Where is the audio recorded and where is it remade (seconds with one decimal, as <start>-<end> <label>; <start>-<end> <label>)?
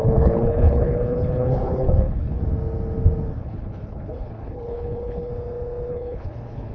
0.0-2.4 remade; 2.4-3.4 recorded; 3.4-5.3 remade; 5.3-5.9 recorded; 5.9-6.7 remade